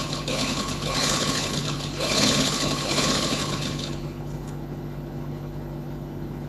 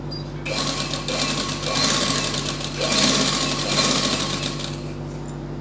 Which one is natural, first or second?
second